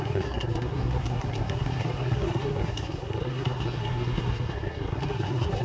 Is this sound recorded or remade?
remade